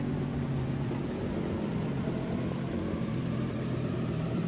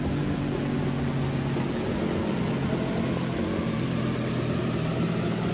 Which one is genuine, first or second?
second